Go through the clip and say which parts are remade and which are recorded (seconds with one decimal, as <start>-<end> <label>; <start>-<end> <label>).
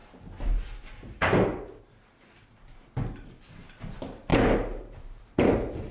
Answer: 0.0-4.3 recorded; 4.3-5.5 remade; 5.5-5.9 recorded